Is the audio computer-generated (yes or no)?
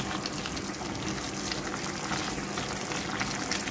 no